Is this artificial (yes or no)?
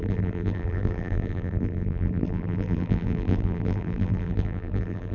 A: yes